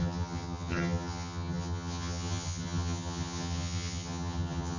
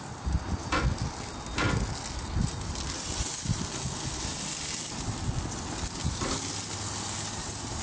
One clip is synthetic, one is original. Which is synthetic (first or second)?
first